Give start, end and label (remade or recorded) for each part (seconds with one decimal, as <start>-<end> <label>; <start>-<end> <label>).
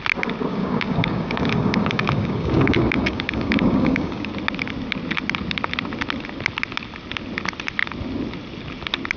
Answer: 0.0-0.5 recorded; 0.5-4.3 remade; 4.3-9.2 recorded